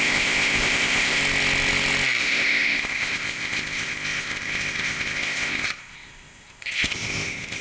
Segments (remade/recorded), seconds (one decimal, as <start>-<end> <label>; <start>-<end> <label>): 0.0-1.2 remade; 1.2-2.2 recorded; 2.2-7.6 remade